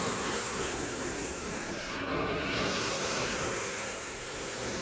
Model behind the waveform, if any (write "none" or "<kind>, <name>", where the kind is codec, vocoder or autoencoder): codec, SNAC